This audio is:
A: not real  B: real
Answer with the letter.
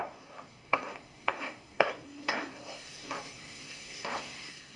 A